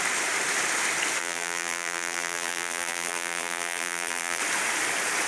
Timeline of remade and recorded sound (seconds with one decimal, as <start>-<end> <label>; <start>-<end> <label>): 0.0-1.2 recorded; 1.2-4.4 remade; 4.4-5.3 recorded